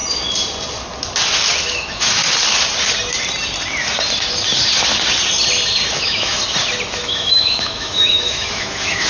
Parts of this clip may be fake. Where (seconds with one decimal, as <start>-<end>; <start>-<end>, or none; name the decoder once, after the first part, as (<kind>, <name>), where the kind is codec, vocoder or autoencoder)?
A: 1.6-2.2 (autoencoder, DAC-VAE); 6.0-6.4; 6.9-9.1